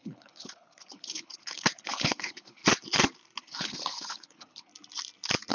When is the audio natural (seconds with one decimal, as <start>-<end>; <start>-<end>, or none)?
2.6-3.4; 4.7-5.5